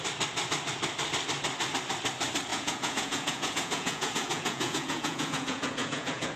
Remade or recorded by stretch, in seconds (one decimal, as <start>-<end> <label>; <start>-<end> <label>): 0.0-2.5 recorded; 2.5-6.4 remade